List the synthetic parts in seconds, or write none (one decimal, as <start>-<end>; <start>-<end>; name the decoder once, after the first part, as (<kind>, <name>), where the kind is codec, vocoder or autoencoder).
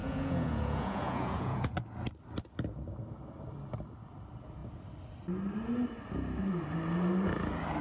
0.0-1.7 (vocoder, Vocos)